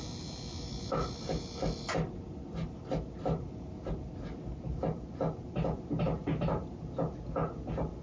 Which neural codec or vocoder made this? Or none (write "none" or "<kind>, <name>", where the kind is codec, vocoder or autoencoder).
none